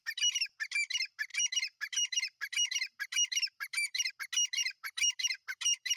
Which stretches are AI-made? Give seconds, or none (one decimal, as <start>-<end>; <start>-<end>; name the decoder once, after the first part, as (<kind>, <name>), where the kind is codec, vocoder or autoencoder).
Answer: 1.3-4.1 (vocoder, BigVGAN v2); 4.6-6.0